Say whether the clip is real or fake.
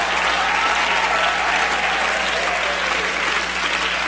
real